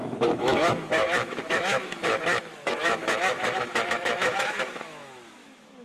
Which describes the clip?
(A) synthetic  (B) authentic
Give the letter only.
A